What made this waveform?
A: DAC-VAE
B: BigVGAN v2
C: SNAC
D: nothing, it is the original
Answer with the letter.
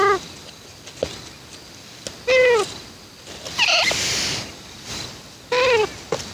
D